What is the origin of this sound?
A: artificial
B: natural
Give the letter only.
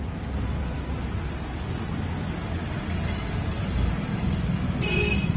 B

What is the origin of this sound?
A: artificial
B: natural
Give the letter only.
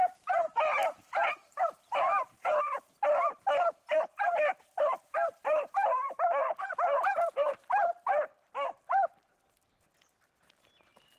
A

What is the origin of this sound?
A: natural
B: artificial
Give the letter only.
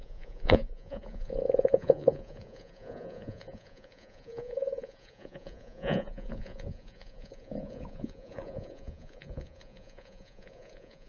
B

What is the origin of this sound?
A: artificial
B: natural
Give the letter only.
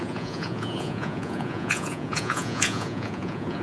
A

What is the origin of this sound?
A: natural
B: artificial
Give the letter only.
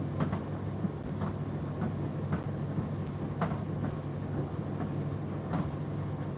A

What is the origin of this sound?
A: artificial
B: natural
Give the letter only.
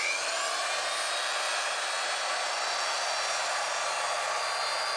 B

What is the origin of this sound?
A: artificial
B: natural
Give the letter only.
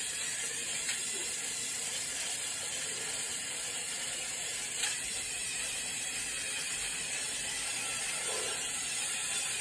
B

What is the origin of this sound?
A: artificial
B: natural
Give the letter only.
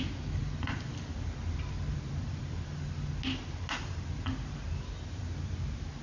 B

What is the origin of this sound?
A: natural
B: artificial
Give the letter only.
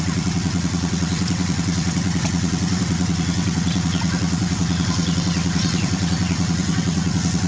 B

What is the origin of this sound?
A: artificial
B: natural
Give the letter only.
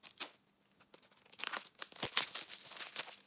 B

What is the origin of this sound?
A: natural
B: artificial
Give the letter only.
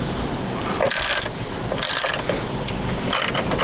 A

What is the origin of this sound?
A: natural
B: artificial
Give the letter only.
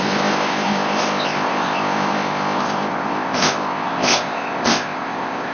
B